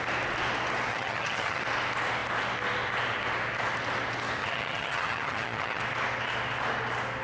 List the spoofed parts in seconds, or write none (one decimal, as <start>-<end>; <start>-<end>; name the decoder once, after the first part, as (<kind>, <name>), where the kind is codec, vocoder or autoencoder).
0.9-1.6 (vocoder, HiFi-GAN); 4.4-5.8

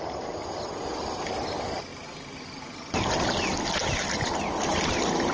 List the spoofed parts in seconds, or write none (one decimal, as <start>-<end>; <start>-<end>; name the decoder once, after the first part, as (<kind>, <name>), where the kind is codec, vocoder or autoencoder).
none

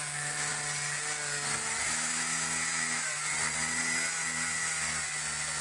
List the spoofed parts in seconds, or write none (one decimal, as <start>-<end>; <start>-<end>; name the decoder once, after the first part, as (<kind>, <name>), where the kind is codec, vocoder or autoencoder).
0.0-0.5 (autoencoder, DAC-VAE); 1.8-3.3